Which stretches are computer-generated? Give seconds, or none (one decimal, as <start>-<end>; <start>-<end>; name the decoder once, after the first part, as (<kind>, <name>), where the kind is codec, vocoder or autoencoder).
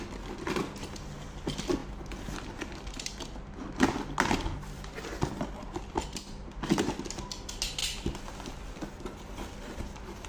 none